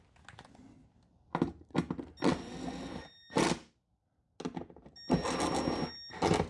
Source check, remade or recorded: recorded